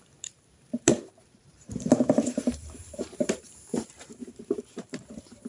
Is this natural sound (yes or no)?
no